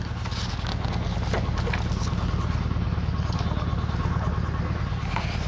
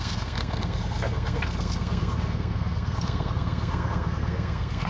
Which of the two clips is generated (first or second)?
second